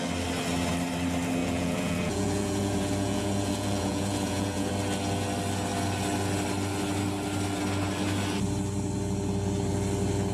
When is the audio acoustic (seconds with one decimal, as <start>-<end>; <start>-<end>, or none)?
0.0-1.4; 4.7-10.3